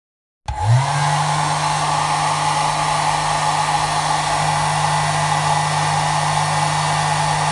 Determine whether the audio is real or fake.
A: real